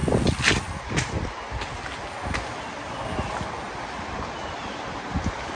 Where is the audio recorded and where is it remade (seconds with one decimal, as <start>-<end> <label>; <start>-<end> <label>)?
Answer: 0.0-5.5 recorded

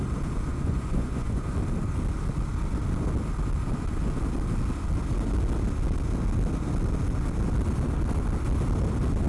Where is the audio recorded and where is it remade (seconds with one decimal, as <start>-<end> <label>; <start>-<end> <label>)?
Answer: 0.0-0.5 recorded; 0.5-1.4 remade; 1.4-9.3 recorded

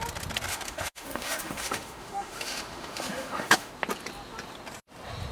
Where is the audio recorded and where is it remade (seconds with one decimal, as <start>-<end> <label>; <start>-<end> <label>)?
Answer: 0.0-0.5 recorded; 0.5-3.7 remade; 3.7-5.3 recorded

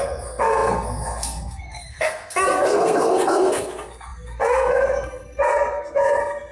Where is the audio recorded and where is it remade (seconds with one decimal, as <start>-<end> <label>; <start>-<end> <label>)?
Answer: 0.0-6.5 remade

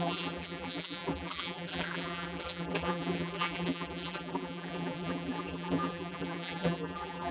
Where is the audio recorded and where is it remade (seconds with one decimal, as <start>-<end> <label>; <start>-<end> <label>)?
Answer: 0.0-7.3 remade

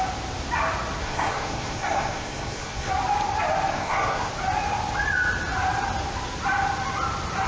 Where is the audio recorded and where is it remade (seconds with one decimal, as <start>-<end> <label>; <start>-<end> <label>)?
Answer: 0.0-1.0 recorded; 1.0-2.9 remade; 2.9-3.7 recorded; 3.7-4.3 remade; 4.3-7.5 recorded

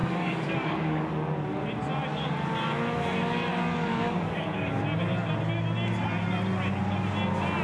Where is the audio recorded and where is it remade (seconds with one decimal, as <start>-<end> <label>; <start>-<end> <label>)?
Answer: 0.0-1.1 remade; 1.1-3.9 recorded; 3.9-4.8 remade; 4.8-7.6 recorded